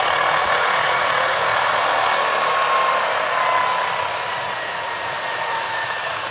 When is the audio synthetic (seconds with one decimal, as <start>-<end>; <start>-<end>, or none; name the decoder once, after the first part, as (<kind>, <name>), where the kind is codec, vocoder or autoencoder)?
0.0-1.5 (vocoder, Vocos); 4.3-6.3